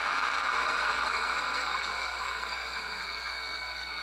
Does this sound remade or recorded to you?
remade